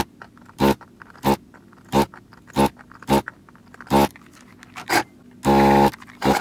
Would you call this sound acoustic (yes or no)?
yes